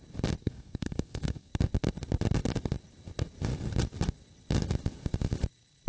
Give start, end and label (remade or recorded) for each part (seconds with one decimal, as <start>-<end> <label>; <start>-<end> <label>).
0.0-0.4 recorded; 0.4-1.5 remade; 1.5-5.9 recorded